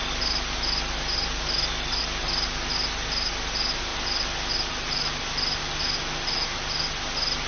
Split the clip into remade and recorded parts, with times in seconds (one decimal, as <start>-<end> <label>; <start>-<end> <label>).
0.0-7.5 recorded